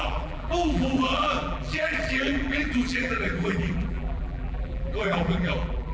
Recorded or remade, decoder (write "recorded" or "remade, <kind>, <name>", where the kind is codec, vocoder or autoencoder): remade, vocoder, BigVGAN v2